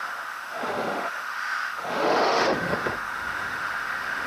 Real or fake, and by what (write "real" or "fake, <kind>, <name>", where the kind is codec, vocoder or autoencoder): fake, autoencoder, DAC-VAE